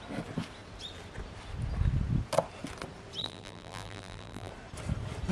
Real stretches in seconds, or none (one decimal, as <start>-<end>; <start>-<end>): 0.0-3.2; 4.5-5.3

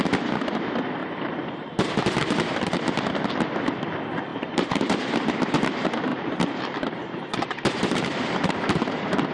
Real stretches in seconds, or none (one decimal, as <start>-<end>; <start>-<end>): 0.0-1.0; 1.9-4.3; 5.0-6.1